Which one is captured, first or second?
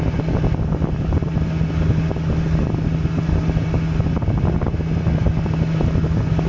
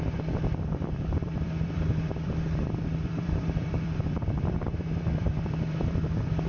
first